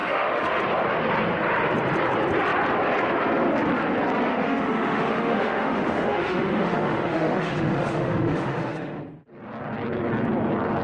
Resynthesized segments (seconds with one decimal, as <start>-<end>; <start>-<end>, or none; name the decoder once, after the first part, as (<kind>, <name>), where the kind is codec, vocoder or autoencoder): 0.0-0.6 (autoencoder, DAC-VAE); 4.3-9.0